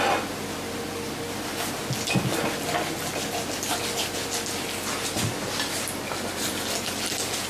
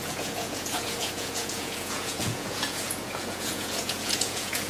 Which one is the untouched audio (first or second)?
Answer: first